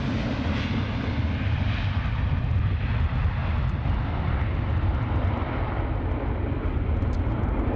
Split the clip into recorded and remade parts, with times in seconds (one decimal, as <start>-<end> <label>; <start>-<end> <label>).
0.0-7.8 recorded